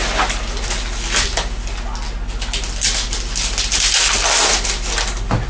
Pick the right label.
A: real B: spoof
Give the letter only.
A